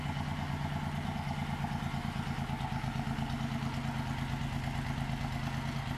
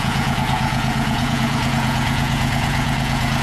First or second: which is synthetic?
second